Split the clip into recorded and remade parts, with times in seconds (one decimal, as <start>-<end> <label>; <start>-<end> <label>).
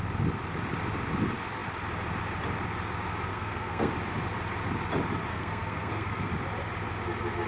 0.0-3.3 recorded; 3.3-3.9 remade; 3.9-5.3 recorded; 5.3-6.3 remade; 6.3-7.5 recorded